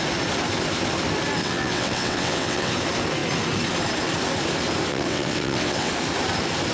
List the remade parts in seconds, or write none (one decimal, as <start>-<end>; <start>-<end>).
1.4-2.7; 4.9-5.9